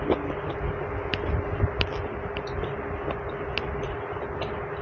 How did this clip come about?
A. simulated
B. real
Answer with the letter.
B